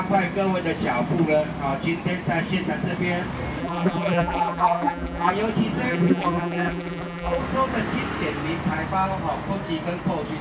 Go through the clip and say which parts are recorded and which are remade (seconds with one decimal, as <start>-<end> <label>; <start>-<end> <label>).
0.0-3.6 recorded; 3.6-5.3 remade; 5.3-5.9 recorded; 5.9-7.4 remade; 7.4-10.4 recorded